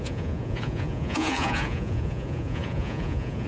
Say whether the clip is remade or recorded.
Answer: remade